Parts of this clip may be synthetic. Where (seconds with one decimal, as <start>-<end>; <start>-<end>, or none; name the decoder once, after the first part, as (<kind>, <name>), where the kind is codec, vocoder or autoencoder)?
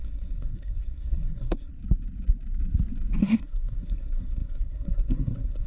0.0-1.7 (codec, SNAC); 3.2-5.7